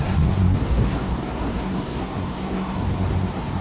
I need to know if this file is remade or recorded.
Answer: remade